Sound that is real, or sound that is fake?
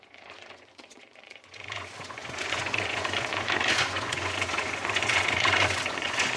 fake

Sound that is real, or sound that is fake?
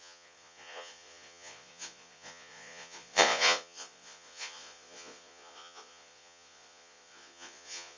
fake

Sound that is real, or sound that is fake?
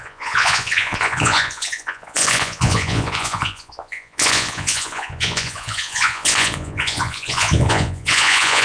fake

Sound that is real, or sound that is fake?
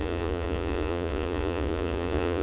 fake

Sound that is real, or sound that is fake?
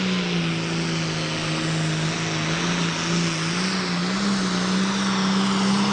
real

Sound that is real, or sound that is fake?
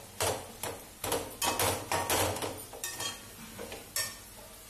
real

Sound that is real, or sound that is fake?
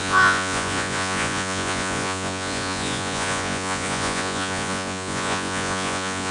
fake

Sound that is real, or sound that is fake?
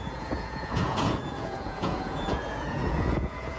fake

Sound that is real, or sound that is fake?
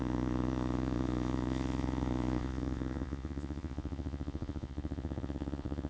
fake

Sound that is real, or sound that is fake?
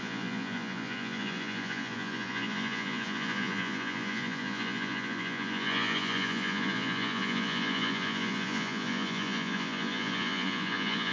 fake